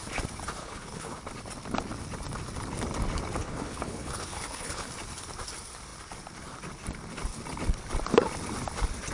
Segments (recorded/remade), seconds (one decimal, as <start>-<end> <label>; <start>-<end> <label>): 0.0-0.6 recorded; 0.6-1.2 remade; 1.2-3.4 recorded; 3.4-4.9 remade; 4.9-9.1 recorded